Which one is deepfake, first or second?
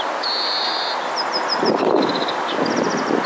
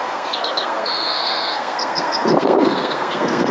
second